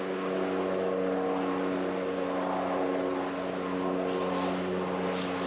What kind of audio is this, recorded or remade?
recorded